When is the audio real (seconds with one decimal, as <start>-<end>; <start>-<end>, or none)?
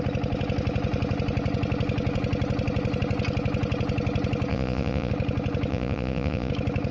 0.0-4.5; 5.1-5.7; 6.5-6.9